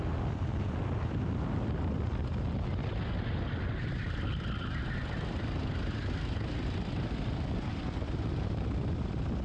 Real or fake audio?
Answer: real